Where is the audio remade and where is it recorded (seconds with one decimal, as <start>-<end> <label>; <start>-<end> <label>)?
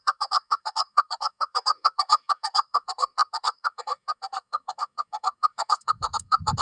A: 0.0-6.6 remade